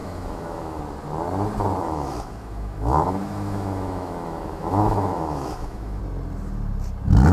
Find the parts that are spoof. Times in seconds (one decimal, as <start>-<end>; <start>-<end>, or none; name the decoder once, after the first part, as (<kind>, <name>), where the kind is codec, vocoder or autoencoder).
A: 0.0-0.8 (autoencoder, DAC-VAE); 1.8-6.0